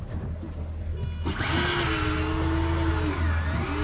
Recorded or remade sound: recorded